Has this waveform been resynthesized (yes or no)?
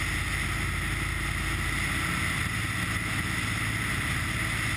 no